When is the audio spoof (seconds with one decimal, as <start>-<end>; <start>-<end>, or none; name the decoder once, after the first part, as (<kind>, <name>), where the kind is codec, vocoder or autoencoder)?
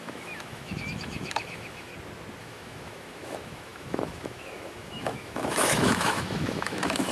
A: 0.0-1.9 (autoencoder, DAC-VAE); 2.4-7.1